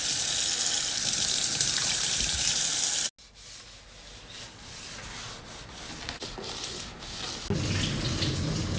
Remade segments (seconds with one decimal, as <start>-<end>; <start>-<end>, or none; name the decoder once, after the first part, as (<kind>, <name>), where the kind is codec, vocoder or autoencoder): 1.8-2.5 (vocoder, BigVGAN v2)